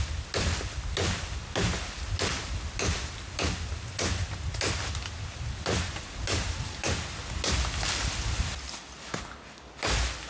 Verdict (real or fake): real